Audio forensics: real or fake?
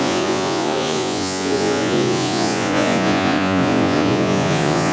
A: fake